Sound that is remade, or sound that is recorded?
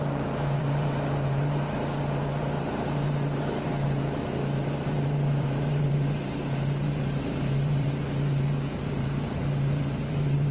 remade